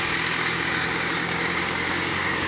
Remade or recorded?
remade